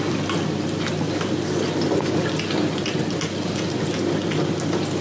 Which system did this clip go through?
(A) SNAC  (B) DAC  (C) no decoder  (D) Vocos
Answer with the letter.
C